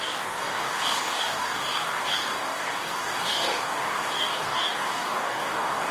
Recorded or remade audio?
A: remade